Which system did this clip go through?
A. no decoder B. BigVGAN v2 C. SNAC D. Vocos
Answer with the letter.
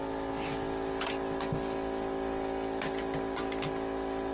A